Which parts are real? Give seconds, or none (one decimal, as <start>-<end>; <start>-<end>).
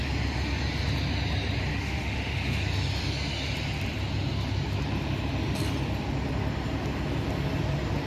0.0-1.7; 2.6-8.1